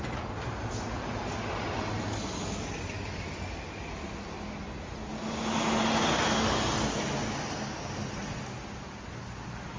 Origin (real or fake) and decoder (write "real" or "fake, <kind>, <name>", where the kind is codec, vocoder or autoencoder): real